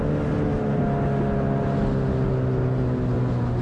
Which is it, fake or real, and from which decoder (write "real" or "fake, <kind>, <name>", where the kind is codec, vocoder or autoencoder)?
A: real